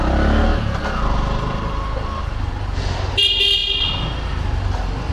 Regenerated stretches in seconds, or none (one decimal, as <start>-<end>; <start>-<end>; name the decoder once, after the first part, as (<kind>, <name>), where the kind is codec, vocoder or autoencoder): none